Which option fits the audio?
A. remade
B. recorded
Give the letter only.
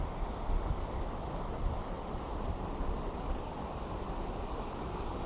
B